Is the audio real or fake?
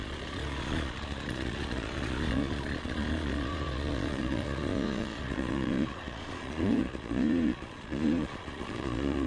fake